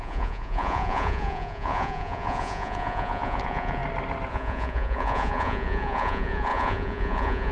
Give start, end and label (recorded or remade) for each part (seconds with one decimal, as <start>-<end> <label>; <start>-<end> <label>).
0.0-3.8 remade; 3.8-4.3 recorded; 4.3-7.5 remade